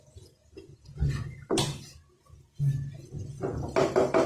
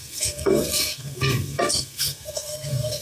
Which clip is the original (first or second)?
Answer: first